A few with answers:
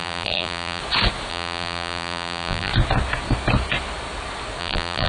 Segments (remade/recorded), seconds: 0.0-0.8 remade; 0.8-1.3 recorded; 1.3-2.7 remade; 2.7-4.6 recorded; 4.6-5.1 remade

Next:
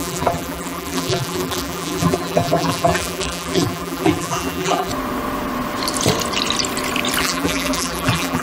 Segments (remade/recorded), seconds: 0.0-4.9 remade; 4.9-7.2 recorded; 7.2-8.4 remade

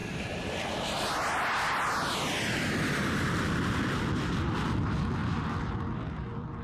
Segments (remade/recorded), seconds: 0.0-4.0 remade; 4.0-5.2 recorded; 5.2-6.6 remade